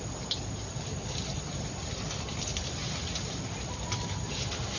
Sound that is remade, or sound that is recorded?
recorded